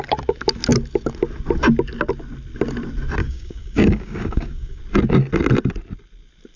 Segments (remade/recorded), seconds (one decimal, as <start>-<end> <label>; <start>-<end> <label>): 0.0-3.2 recorded; 3.2-4.8 remade; 4.8-6.6 recorded